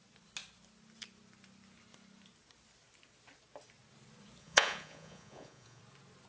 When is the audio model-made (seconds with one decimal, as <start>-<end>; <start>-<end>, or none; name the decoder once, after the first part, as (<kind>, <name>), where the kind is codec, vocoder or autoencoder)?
4.4-5.8 (vocoder, Vocos)